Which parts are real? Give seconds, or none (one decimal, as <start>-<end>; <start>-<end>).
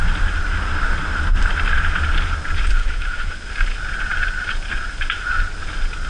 0.0-2.8; 3.5-6.1